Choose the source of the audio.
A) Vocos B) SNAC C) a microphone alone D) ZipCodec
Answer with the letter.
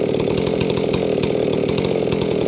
C